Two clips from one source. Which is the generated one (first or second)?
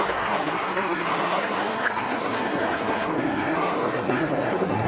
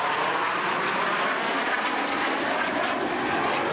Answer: first